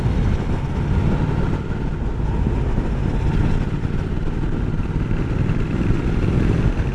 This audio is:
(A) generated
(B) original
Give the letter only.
B